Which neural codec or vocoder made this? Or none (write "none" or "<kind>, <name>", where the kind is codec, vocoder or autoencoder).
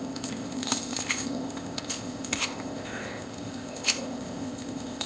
codec, ZipCodec